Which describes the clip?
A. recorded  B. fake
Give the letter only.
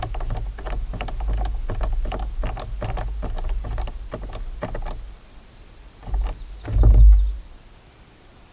A